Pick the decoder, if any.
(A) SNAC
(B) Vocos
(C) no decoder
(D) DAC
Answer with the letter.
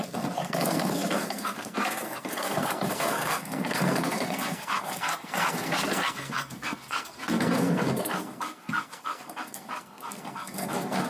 A